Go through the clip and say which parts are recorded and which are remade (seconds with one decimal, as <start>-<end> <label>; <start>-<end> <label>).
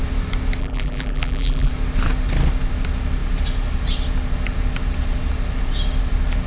0.0-0.6 recorded; 0.6-1.7 remade; 1.7-6.5 recorded